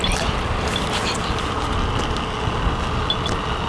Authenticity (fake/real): real